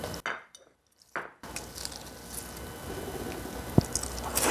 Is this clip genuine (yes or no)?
yes